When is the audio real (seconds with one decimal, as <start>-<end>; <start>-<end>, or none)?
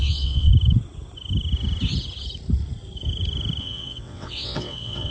0.5-3.6